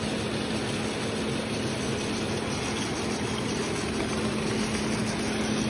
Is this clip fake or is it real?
real